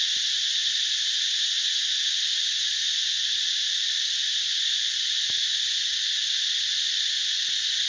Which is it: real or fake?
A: real